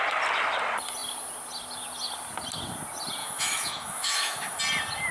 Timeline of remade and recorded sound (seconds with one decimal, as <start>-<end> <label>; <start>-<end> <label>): 0.0-3.2 recorded; 3.2-4.6 remade; 4.6-5.1 recorded